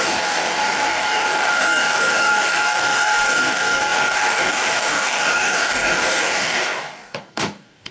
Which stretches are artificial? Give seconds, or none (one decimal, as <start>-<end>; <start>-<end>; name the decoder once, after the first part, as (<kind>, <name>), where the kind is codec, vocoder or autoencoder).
0.0-7.9 (codec, DAC)